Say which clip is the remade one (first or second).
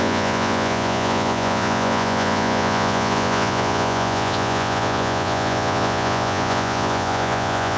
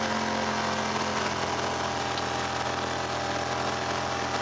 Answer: first